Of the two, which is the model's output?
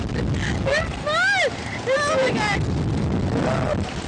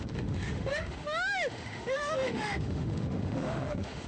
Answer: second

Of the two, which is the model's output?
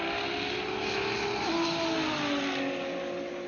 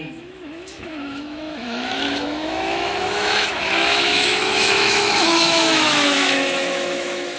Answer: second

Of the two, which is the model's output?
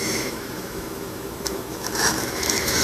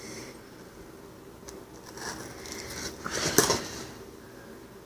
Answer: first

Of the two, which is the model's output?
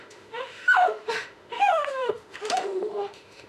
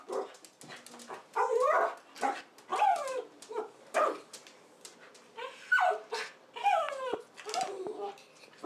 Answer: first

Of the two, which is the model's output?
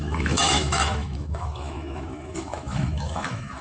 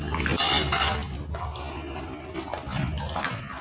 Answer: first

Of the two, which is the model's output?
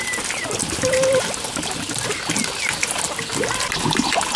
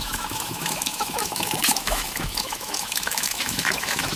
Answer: second